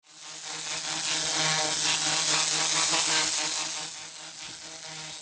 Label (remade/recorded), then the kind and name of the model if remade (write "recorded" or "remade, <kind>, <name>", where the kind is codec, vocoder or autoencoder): recorded